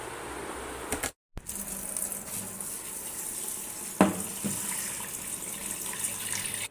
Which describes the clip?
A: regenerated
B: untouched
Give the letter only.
B